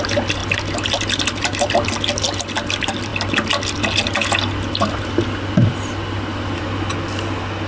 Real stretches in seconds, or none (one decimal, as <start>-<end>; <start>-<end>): 0.0-7.7